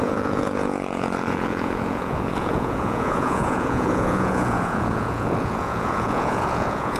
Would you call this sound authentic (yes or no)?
no